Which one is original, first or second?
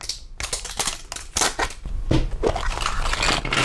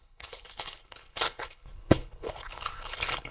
first